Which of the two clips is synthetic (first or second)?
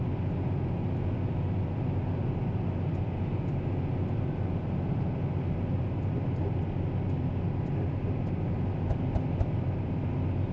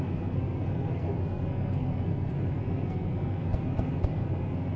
second